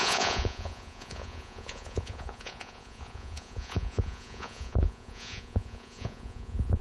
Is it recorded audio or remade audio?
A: remade